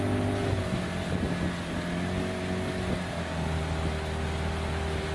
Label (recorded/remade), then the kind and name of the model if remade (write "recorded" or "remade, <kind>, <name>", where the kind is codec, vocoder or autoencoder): recorded